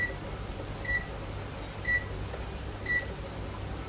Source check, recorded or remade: recorded